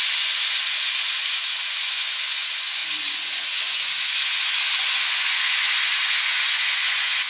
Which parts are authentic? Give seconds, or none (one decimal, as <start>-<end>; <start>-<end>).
none